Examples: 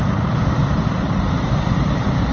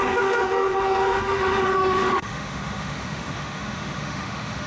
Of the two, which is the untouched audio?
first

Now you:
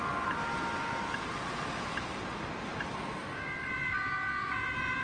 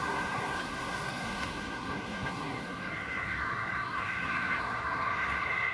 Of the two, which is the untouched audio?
first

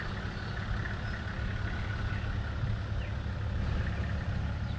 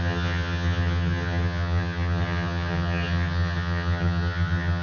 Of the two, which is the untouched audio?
first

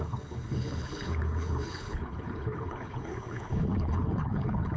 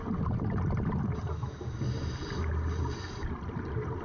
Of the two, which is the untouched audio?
second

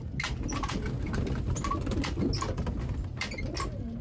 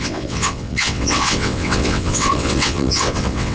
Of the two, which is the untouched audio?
first